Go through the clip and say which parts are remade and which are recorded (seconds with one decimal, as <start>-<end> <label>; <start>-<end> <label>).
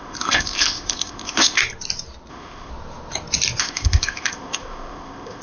0.0-1.6 remade; 1.6-2.3 recorded; 2.3-2.7 remade; 2.7-3.6 recorded; 3.6-5.4 remade